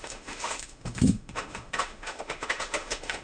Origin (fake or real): fake